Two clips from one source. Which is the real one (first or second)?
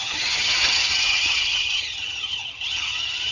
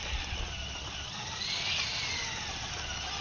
second